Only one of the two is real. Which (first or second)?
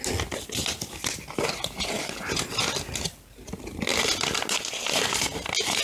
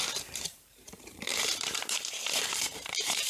first